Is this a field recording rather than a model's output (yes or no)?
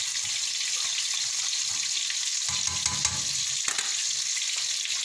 yes